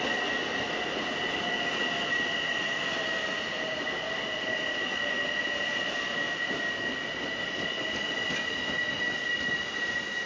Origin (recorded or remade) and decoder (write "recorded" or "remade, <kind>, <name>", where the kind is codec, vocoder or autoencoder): recorded